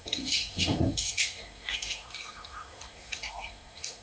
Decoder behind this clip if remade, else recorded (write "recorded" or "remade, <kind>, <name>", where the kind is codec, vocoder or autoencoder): remade, codec, SNAC